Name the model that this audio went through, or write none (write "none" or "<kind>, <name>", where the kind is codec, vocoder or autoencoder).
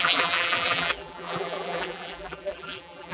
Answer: vocoder, BigVGAN v2